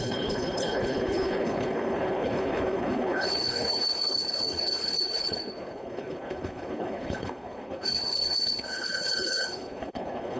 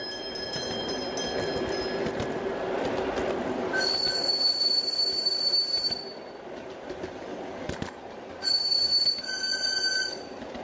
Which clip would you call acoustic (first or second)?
second